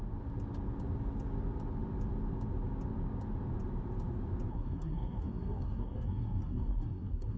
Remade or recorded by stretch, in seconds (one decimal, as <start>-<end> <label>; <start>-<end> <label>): 0.0-4.5 recorded; 4.5-7.4 remade